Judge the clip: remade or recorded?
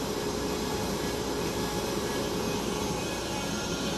remade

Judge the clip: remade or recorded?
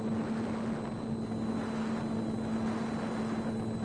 recorded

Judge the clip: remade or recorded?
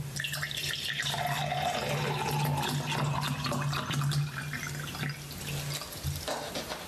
recorded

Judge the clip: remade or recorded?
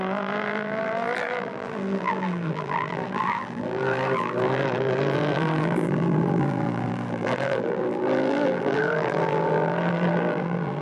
remade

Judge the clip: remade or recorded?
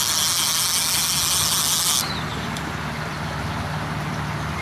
recorded